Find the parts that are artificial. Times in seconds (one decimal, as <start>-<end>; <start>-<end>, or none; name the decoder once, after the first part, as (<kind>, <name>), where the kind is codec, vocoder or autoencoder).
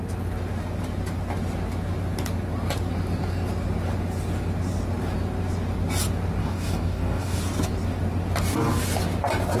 6.4-7.4 (codec, DAC)